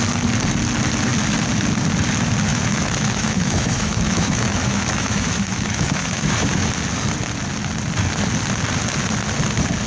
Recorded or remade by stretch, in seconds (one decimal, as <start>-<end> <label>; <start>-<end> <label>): 0.0-2.5 recorded; 2.5-6.7 remade; 6.7-9.9 recorded